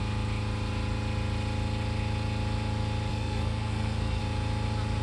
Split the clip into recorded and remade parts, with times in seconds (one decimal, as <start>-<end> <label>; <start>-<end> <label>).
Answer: 0.0-3.1 recorded; 3.1-4.2 remade; 4.2-5.0 recorded

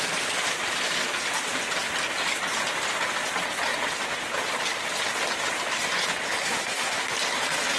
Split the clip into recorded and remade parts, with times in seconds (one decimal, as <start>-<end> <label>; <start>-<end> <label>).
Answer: 0.0-6.4 recorded; 6.4-7.1 remade; 7.1-7.8 recorded

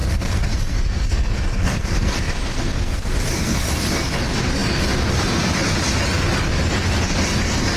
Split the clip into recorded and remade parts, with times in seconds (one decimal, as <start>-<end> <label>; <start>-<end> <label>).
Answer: 0.0-3.7 remade; 3.7-7.8 recorded

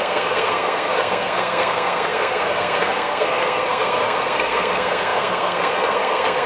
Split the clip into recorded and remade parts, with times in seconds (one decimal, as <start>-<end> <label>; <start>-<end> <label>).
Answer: 0.0-6.5 remade

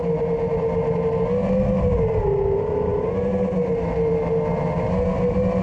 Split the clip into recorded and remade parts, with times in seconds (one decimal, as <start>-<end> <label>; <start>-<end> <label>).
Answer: 0.0-5.6 recorded

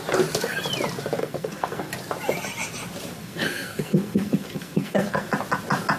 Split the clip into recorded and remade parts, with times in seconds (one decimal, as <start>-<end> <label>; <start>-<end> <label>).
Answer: 0.0-1.2 recorded; 1.2-1.9 remade; 1.9-3.2 recorded; 3.2-5.3 remade; 5.3-6.0 recorded